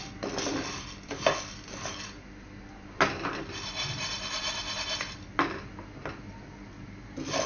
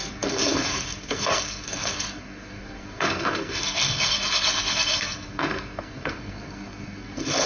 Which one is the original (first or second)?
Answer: first